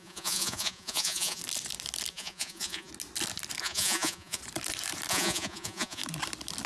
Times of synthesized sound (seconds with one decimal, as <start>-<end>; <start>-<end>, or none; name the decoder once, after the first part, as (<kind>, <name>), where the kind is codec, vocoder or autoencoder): 0.0-1.4 (vocoder, Vocos); 2.1-2.9; 3.6-4.4; 5.1-6.0